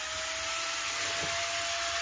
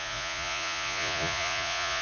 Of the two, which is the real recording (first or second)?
first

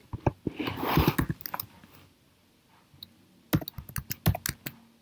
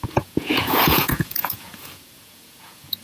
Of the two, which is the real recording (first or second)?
first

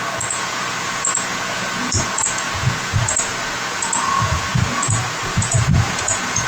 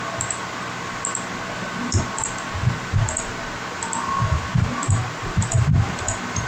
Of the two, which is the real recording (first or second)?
second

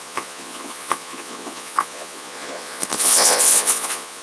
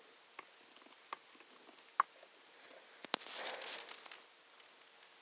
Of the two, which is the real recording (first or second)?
second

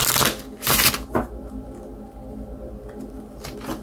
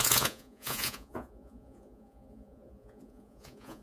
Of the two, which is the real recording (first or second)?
first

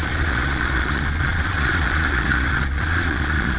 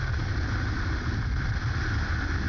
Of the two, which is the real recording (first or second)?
second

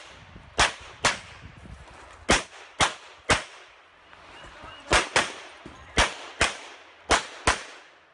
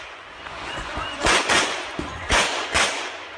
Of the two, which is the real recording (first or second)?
first